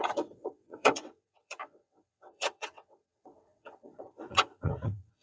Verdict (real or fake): fake